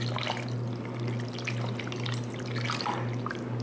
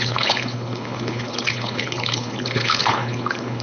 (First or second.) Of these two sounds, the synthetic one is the second